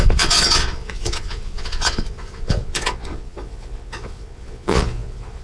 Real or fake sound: fake